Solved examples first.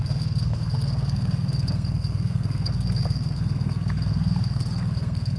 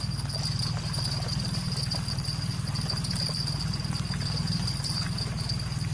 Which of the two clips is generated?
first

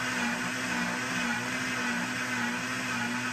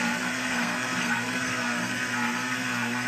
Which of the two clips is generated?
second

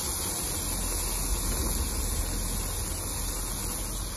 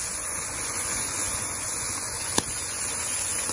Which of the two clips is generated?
second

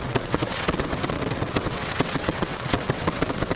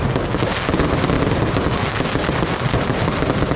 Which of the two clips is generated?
first